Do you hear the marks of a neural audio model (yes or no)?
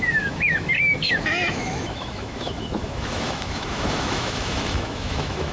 yes